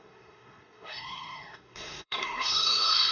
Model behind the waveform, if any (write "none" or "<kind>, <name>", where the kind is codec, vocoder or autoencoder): codec, SNAC